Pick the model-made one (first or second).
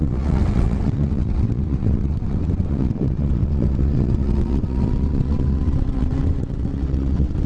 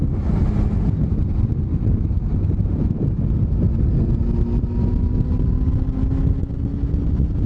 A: first